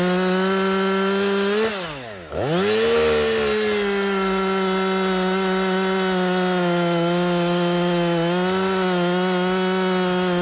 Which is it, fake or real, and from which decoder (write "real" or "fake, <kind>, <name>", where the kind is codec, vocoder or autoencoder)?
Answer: real